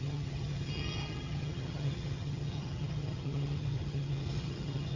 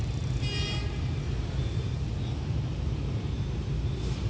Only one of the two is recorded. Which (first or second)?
second